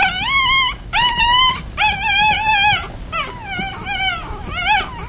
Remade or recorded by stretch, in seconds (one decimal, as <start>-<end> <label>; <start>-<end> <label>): 0.0-1.2 recorded; 1.2-2.5 remade; 2.5-3.7 recorded; 3.7-4.2 remade; 4.2-5.1 recorded

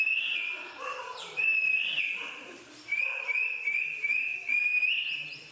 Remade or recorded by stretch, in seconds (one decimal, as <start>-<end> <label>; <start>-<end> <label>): 0.0-0.5 remade; 0.5-1.0 recorded; 1.0-1.5 remade; 1.5-2.0 recorded; 2.0-4.3 remade; 4.3-4.9 recorded; 4.9-5.5 remade

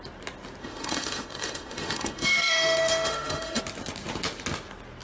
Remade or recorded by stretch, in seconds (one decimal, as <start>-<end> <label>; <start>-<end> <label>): 0.0-0.6 recorded; 0.6-3.6 remade; 3.6-5.0 recorded

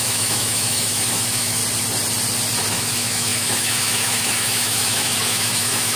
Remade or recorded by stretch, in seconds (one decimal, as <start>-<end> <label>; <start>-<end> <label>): 0.0-1.6 remade; 1.6-2.7 recorded; 2.7-6.0 remade

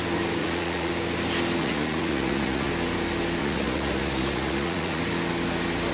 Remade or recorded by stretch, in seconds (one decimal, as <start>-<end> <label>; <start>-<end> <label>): 0.0-0.4 recorded; 0.4-0.9 remade; 0.9-1.6 recorded; 1.6-2.7 remade; 2.7-3.4 recorded; 3.4-5.0 remade; 5.0-5.9 recorded

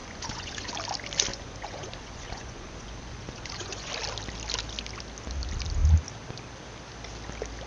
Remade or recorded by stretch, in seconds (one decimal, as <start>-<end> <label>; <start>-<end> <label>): 0.0-0.7 remade; 0.7-1.3 recorded; 1.3-3.9 remade; 3.9-7.7 recorded

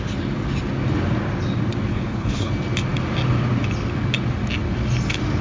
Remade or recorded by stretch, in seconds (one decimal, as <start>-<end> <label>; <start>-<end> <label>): 0.0-1.9 recorded; 1.9-2.5 remade; 2.5-5.4 recorded